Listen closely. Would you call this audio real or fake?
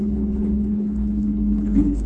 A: fake